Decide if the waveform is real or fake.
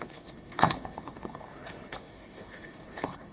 fake